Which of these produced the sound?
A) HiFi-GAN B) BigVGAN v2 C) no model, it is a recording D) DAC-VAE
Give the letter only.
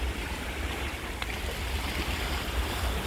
C